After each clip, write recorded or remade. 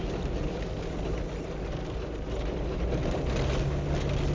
recorded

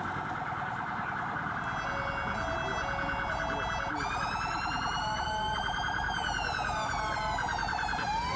recorded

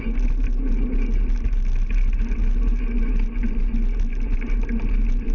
recorded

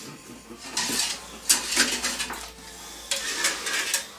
recorded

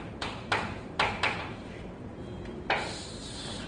remade